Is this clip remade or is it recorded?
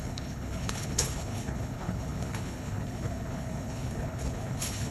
remade